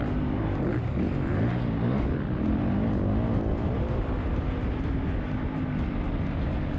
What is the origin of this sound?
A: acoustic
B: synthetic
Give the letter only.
A